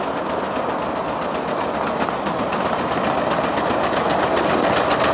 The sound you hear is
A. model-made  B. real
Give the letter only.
B